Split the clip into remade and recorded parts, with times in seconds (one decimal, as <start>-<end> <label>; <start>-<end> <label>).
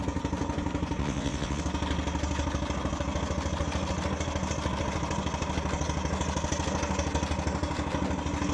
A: 0.0-1.0 recorded; 1.0-1.6 remade; 1.6-8.5 recorded